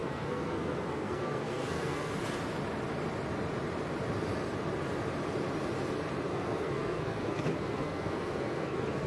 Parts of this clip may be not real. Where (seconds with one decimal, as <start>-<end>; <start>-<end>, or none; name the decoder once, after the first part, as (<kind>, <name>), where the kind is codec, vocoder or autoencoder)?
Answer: 0.0-2.1 (codec, SNAC); 6.3-9.1